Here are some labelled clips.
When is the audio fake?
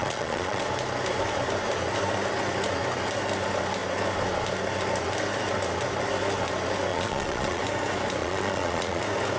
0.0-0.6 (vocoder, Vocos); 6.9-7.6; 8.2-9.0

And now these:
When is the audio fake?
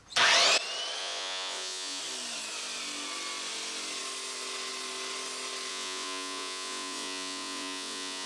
1.0-2.0 (vocoder, Vocos); 5.7-8.3